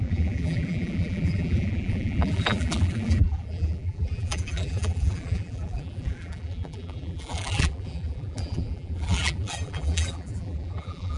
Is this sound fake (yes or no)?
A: yes